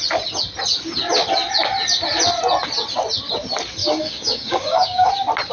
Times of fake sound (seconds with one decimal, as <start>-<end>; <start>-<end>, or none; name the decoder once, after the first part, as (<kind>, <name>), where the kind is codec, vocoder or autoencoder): 3.8-5.1 (codec, DAC)